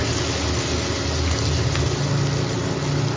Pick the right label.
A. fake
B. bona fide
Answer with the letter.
B